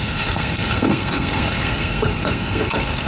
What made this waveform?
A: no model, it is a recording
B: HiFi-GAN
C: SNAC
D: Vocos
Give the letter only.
C